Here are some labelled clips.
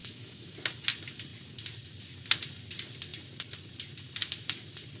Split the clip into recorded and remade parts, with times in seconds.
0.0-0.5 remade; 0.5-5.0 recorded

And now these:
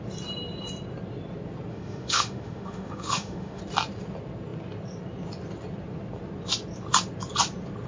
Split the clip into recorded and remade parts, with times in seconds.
0.0-1.7 recorded; 1.7-3.6 remade; 3.6-7.9 recorded

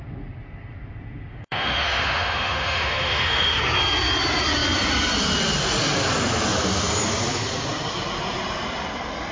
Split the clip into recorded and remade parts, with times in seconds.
0.0-1.3 recorded; 1.3-3.6 remade; 3.6-9.3 recorded

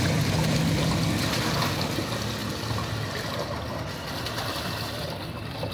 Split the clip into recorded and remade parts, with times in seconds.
0.0-5.7 recorded

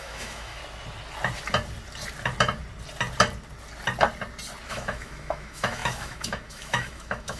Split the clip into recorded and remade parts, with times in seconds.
0.0-0.6 remade; 0.6-4.7 recorded; 4.7-7.4 remade